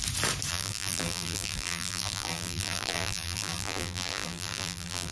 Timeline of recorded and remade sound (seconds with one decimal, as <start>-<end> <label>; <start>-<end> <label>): 0.0-0.5 recorded; 0.5-5.1 remade